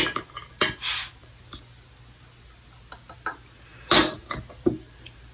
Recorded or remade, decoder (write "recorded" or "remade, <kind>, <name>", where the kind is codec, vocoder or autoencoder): recorded